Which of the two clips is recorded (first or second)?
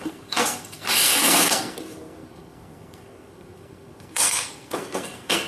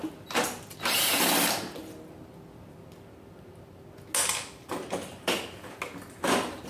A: second